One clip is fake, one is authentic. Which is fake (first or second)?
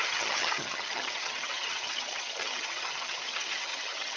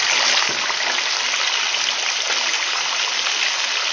first